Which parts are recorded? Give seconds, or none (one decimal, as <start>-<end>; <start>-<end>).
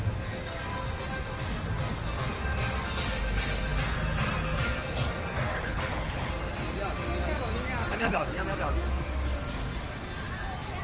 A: 0.0-5.5; 6.3-7.9; 8.4-10.8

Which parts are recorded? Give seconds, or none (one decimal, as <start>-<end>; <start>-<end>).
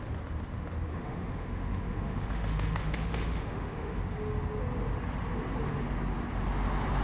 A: 0.0-0.9; 4.0-7.0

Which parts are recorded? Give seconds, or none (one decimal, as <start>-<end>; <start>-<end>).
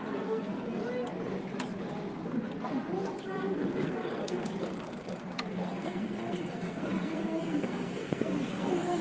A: 0.8-3.2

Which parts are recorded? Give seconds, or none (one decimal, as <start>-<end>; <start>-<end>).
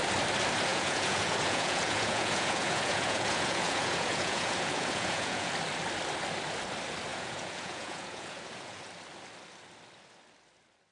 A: 0.0-0.7; 5.5-7.1; 8.8-10.9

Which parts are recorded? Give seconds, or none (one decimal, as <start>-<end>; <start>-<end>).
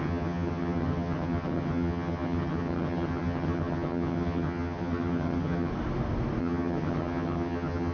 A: 5.7-6.4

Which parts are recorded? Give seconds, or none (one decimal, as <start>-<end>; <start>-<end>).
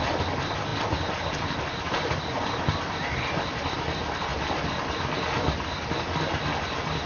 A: 0.0-7.1